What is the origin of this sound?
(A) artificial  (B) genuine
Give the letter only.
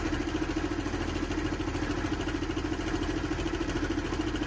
B